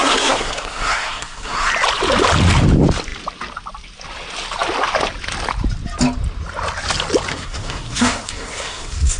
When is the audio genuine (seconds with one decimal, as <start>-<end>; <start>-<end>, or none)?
1.7-7.3